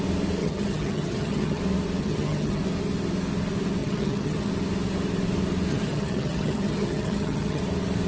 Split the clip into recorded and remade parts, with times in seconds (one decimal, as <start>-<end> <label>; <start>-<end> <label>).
0.0-0.4 recorded; 0.4-1.6 remade; 1.6-2.0 recorded; 2.0-2.6 remade; 2.6-3.8 recorded; 3.8-4.5 remade; 4.5-5.7 recorded; 5.7-7.6 remade; 7.6-8.1 recorded